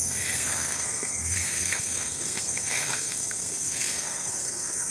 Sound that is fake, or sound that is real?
fake